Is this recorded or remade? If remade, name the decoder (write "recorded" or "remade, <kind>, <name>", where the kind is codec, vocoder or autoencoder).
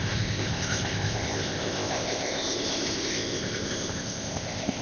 remade, codec, ZipCodec